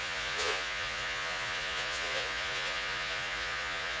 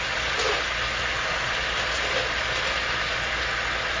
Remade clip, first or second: first